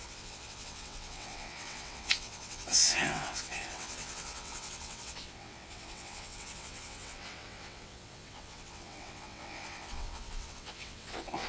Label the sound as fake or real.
fake